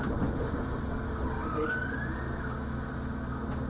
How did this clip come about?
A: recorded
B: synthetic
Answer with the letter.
A